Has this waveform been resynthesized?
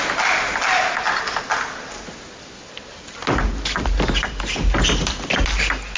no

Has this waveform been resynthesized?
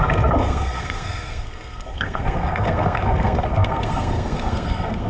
yes